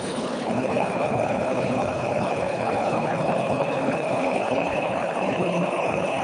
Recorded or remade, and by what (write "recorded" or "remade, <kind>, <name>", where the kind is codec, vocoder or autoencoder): remade, codec, HILCodec